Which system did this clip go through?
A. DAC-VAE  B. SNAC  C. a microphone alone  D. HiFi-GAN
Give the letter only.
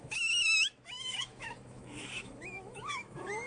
A